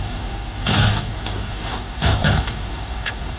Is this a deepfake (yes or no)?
yes